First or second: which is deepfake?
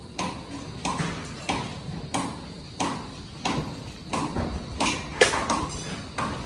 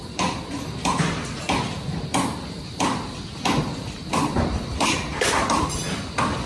second